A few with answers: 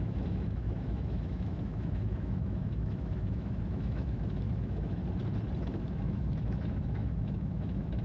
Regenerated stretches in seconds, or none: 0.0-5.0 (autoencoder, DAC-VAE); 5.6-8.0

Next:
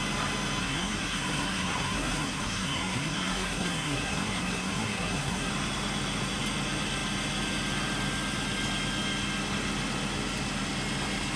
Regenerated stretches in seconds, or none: 0.6-5.5 (codec, SNAC)

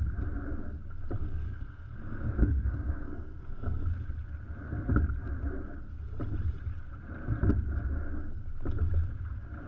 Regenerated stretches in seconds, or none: 1.2-3.8 (codec, SNAC)